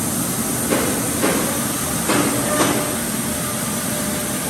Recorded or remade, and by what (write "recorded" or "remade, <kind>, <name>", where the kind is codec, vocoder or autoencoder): recorded